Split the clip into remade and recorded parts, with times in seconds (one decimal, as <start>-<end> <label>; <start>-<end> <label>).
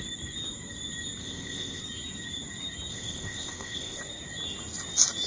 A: 0.0-1.2 recorded; 1.2-1.8 remade; 1.8-2.9 recorded; 2.9-4.0 remade; 4.0-5.3 recorded